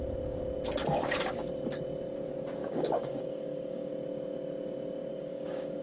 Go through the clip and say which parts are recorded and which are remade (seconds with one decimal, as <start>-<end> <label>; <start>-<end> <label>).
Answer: 0.0-2.6 recorded; 2.6-3.9 remade; 3.9-5.1 recorded; 5.1-5.8 remade

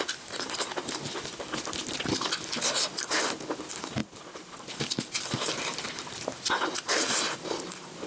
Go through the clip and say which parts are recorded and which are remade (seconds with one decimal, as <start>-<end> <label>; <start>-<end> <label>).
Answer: 0.0-8.1 recorded

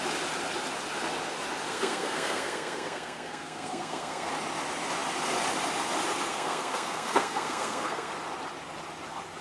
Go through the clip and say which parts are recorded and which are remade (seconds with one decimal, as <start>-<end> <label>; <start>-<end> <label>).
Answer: 0.0-1.7 recorded; 1.7-4.3 remade; 4.3-6.3 recorded; 6.3-8.1 remade; 8.1-9.4 recorded

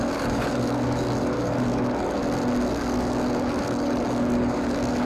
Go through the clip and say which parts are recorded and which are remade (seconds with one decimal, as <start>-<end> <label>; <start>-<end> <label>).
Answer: 0.0-2.2 remade; 2.2-2.7 recorded; 2.7-5.1 remade

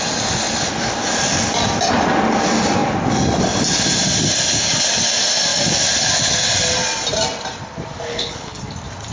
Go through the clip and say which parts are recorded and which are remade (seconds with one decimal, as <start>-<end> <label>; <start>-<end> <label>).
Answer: 0.0-8.1 recorded; 8.1-8.6 remade; 8.6-9.1 recorded

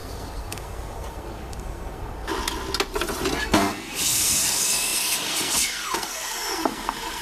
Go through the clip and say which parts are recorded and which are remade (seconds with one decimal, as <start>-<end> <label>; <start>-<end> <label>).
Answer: 0.0-2.3 remade; 2.3-3.4 recorded; 3.4-7.2 remade

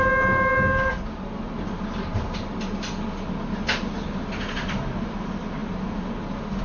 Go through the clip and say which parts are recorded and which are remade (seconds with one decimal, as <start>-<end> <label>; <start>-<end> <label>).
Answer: 0.0-6.6 recorded